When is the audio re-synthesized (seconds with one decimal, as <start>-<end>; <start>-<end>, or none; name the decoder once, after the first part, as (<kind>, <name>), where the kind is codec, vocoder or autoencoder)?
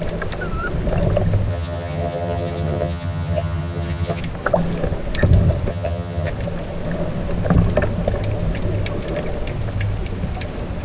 1.5-4.2 (vocoder, HiFi-GAN); 5.7-6.3